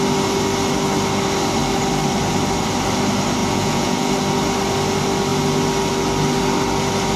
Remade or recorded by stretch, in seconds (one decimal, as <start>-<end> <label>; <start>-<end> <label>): 0.0-3.4 recorded; 3.4-4.1 remade; 4.1-7.2 recorded